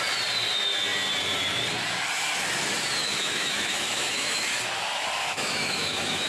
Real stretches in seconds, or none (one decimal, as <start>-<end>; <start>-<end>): 0.0-3.0; 4.6-5.2